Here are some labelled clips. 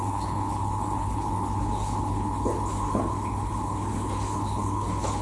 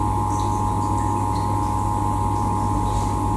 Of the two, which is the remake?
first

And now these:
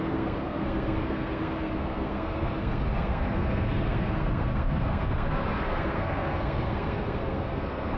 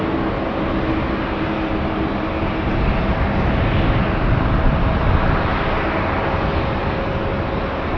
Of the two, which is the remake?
first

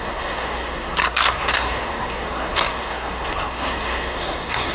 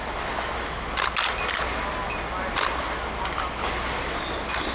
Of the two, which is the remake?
first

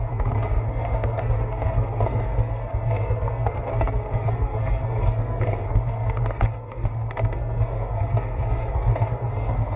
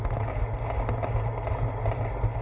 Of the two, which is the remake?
first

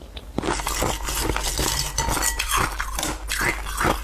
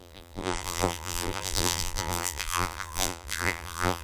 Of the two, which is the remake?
second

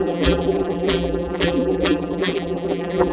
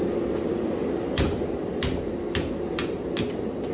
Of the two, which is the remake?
first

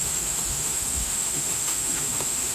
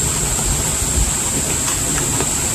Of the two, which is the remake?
first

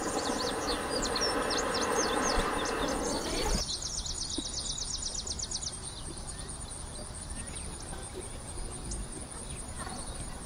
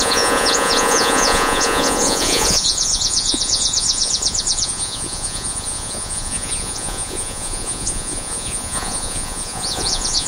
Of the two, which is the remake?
second